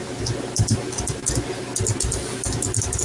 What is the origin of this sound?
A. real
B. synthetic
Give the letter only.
A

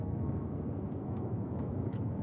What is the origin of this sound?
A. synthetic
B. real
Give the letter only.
A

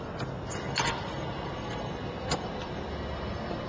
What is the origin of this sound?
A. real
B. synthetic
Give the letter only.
A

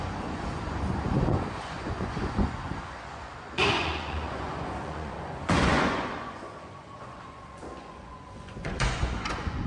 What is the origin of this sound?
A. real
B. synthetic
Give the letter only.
B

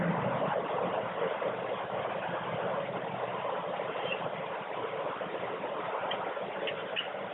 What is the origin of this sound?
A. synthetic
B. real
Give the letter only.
B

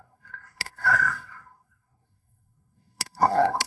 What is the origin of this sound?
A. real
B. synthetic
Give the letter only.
B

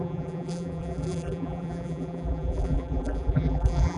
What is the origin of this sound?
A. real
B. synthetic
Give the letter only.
B